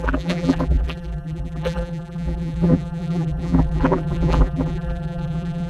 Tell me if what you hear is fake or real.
fake